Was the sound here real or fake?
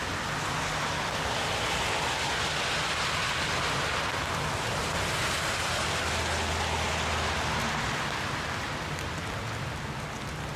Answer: real